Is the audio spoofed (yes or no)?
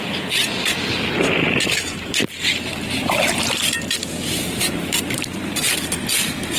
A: no